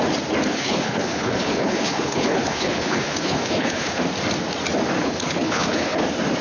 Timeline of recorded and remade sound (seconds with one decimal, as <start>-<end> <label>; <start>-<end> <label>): 0.0-0.6 recorded; 0.6-4.0 remade; 4.0-5.0 recorded; 5.0-6.0 remade; 6.0-6.4 recorded